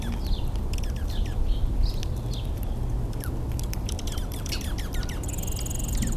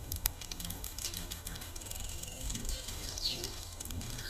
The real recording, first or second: first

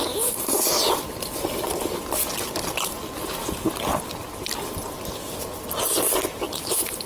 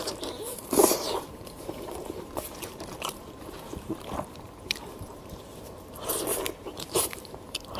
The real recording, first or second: first